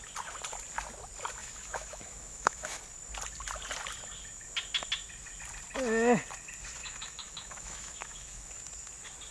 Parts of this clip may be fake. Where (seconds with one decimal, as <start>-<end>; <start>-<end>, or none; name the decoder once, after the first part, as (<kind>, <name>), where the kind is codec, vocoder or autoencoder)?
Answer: 1.4-2.8 (autoencoder, DAC-VAE); 6.8-8.5